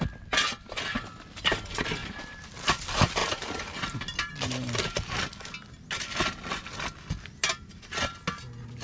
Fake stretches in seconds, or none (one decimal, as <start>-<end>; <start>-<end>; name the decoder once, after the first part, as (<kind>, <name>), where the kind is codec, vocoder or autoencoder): 2.0-2.8 (vocoder, BigVGAN v2); 3.2-4.3